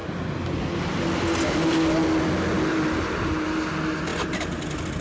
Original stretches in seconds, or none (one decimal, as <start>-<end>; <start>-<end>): 0.0-5.0

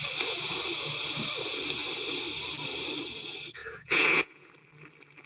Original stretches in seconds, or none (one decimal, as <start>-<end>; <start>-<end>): 0.0-3.6; 4.5-5.3

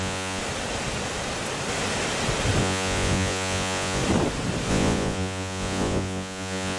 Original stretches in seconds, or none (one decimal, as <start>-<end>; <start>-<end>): 0.4-2.6; 4.0-4.7